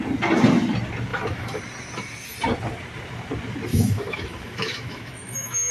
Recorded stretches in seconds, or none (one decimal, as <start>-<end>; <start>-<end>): 0.0-1.1; 1.6-3.7